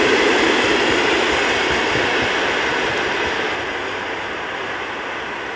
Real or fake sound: real